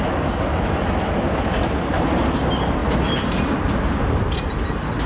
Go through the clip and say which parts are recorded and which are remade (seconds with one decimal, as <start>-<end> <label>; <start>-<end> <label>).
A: 0.0-0.5 recorded; 0.5-1.5 remade; 1.5-5.1 recorded